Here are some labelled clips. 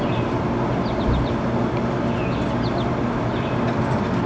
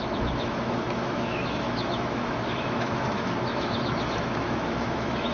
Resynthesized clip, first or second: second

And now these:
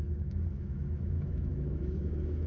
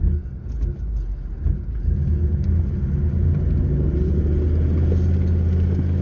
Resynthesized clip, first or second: first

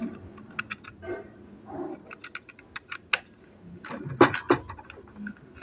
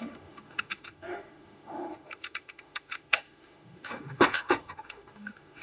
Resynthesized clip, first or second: second